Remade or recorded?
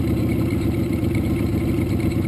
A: remade